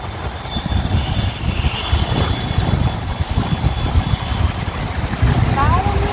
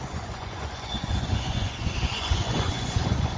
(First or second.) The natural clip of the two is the first